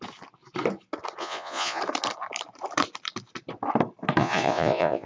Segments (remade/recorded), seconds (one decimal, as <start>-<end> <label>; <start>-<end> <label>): 0.0-1.2 recorded; 1.2-1.8 remade; 1.8-4.2 recorded; 4.2-5.1 remade